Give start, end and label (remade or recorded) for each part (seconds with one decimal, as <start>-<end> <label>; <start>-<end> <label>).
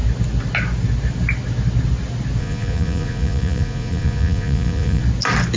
0.0-2.4 recorded; 2.4-5.0 remade; 5.0-5.6 recorded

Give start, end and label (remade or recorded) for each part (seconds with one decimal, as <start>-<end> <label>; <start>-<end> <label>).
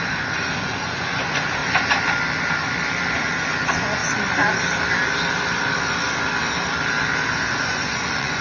0.0-1.6 remade; 1.6-3.1 recorded; 3.1-4.0 remade; 4.0-7.6 recorded; 7.6-8.4 remade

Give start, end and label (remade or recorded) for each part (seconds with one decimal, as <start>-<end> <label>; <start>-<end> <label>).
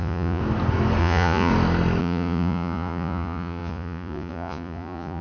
0.0-0.4 remade; 0.4-1.0 recorded; 1.0-1.5 remade; 1.5-2.0 recorded; 2.0-5.2 remade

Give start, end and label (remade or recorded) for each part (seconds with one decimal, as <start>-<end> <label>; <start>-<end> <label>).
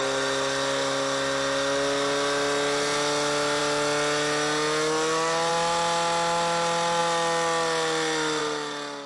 0.0-9.1 recorded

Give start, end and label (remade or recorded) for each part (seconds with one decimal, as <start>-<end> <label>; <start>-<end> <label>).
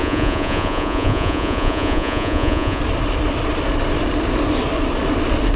0.0-2.8 remade; 2.8-5.6 recorded